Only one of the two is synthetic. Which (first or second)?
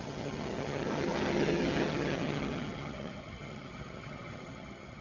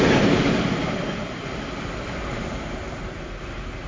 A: first